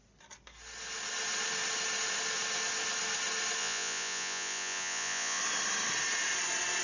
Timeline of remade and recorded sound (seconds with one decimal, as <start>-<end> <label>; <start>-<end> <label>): 0.0-3.6 recorded; 3.6-5.4 remade; 5.4-6.8 recorded